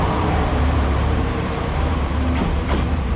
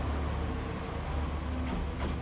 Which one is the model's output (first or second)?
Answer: first